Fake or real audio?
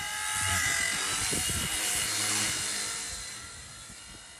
real